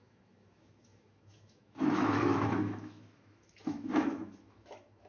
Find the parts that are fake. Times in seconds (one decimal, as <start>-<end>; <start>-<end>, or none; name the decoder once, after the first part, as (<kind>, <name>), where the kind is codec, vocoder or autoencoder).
0.0-5.1 (autoencoder, DAC-VAE)